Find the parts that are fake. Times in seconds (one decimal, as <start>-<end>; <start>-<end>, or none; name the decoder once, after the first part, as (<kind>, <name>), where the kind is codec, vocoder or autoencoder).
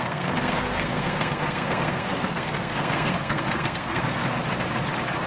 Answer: 0.0-4.2 (codec, SNAC)